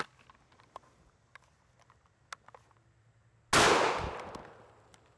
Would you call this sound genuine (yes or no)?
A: yes